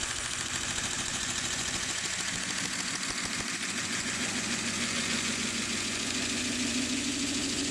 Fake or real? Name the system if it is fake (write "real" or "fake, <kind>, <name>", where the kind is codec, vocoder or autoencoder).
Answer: fake, vocoder, Vocos